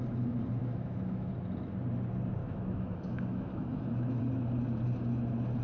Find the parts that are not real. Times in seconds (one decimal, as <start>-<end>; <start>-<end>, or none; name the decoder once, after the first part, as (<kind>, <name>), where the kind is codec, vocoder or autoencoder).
0.6-1.3 (autoencoder, DAC-VAE); 2.4-4.2